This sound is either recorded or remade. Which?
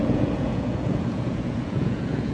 remade